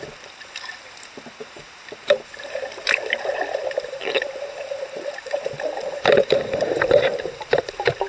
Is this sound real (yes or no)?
no